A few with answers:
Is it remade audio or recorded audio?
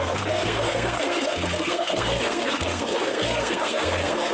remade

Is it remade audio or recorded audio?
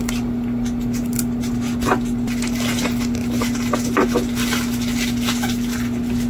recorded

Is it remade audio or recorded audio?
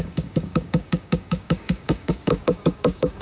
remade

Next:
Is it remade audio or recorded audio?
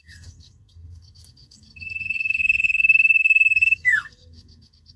remade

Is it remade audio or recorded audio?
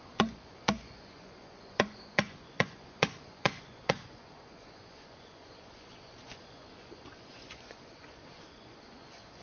remade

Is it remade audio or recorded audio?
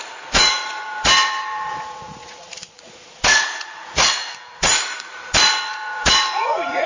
remade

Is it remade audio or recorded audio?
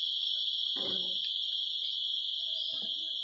recorded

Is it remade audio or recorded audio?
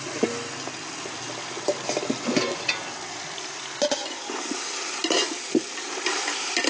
recorded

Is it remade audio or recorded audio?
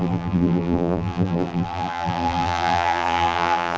remade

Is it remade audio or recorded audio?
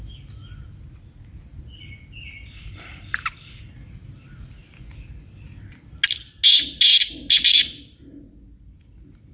recorded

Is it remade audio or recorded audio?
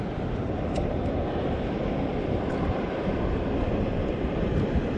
recorded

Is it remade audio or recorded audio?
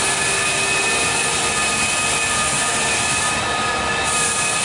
recorded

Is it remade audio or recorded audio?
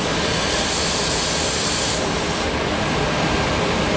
recorded